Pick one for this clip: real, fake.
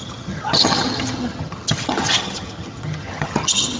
fake